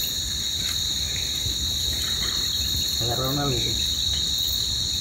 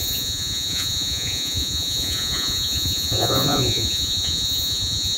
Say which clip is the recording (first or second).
first